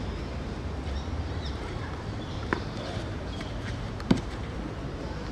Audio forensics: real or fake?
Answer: fake